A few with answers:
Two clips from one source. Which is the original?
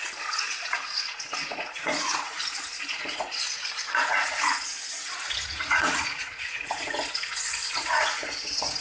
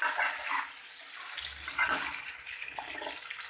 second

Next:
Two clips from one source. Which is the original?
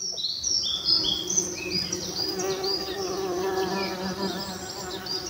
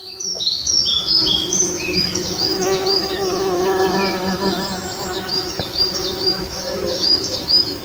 first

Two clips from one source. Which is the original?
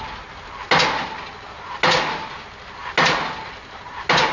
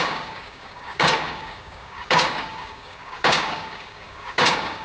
first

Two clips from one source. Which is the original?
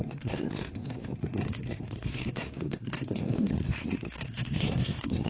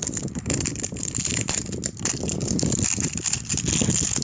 second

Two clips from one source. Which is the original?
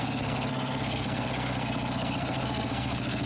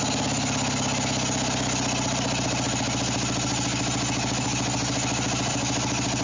second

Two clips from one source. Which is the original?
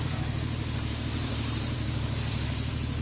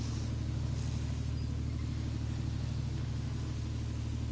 second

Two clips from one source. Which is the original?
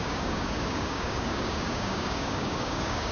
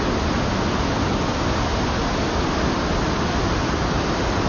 second